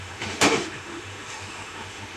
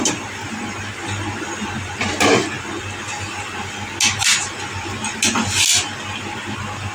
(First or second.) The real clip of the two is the second